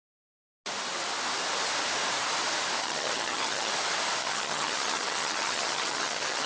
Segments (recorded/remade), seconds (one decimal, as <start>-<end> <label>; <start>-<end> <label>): 0.0-2.8 recorded; 2.8-3.7 remade; 3.7-4.2 recorded; 4.2-6.5 remade